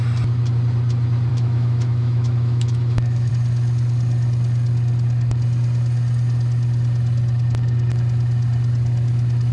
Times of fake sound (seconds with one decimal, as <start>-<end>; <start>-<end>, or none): 1.3-3.3